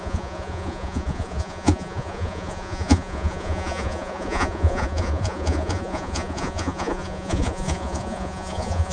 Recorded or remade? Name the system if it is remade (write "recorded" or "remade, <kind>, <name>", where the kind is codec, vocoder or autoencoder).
remade, vocoder, Vocos